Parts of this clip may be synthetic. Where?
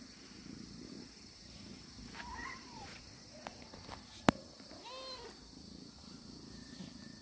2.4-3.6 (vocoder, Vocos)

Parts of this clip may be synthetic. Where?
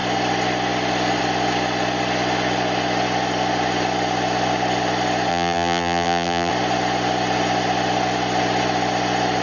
5.3-6.5 (vocoder, BigVGAN v2)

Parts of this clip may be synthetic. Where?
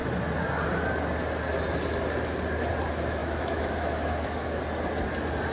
3.2-4.6 (autoencoder, DAC-VAE)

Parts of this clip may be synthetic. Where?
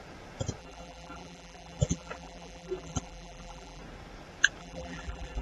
0.6-3.8 (vocoder, BigVGAN v2); 4.6-5.4